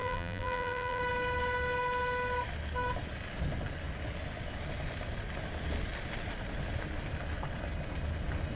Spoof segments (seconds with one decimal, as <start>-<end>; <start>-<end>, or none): 0.0-1.0